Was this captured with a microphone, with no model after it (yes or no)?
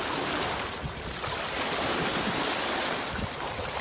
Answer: yes